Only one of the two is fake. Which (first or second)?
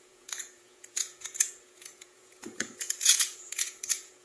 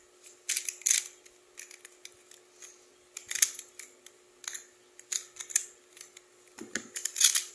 first